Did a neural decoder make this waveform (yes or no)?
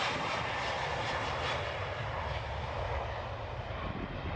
no